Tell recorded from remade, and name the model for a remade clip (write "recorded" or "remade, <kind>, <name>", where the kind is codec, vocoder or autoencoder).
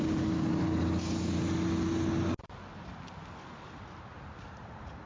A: recorded